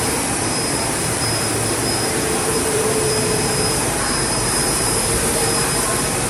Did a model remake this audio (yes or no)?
yes